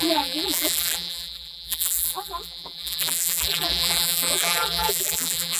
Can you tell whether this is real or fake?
fake